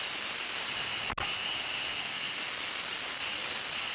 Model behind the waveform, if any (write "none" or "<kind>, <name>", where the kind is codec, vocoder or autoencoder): none